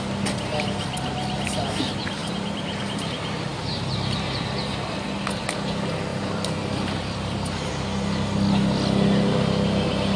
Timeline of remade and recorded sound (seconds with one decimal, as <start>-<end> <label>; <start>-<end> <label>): 0.0-2.2 recorded; 2.2-2.8 remade; 2.8-6.1 recorded; 6.1-7.7 remade; 7.7-10.2 recorded

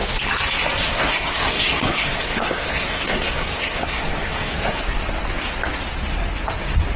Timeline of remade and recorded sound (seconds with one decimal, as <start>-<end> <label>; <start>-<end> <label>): 0.0-0.8 recorded; 0.8-4.8 remade; 4.8-7.0 recorded